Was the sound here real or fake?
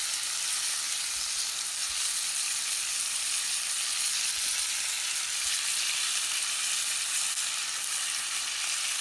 real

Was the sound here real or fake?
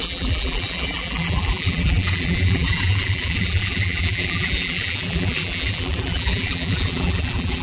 fake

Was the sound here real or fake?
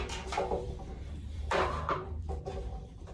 fake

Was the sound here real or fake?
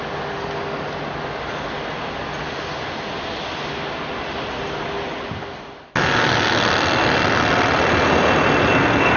real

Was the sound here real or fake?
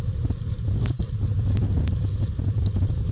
fake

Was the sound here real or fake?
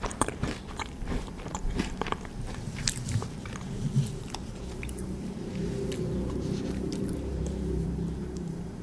fake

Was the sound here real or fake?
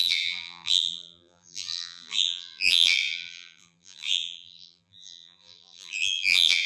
fake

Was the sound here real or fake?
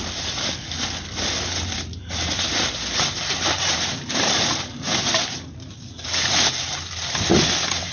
fake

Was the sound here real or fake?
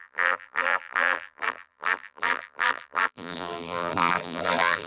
fake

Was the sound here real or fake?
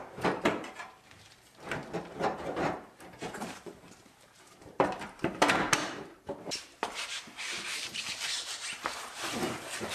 fake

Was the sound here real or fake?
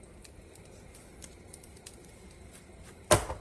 fake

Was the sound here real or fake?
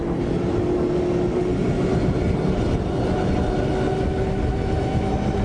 real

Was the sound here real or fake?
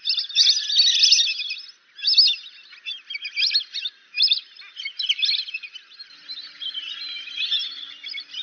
real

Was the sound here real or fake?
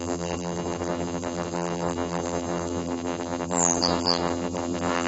fake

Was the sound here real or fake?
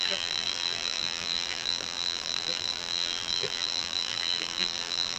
fake